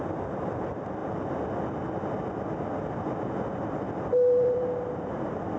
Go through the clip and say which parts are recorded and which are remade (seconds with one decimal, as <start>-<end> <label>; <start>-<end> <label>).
0.0-1.0 remade; 1.0-3.6 recorded; 3.6-5.6 remade